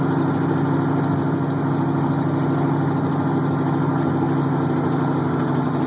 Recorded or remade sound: recorded